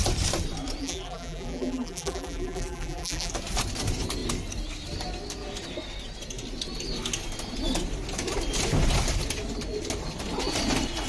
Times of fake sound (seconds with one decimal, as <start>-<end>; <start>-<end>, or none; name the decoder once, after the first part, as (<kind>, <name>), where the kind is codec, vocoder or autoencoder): 0.8-3.3 (vocoder, BigVGAN v2)